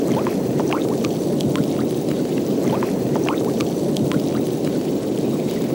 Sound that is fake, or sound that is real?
fake